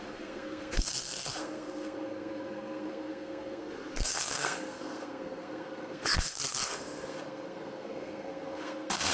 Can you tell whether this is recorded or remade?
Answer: remade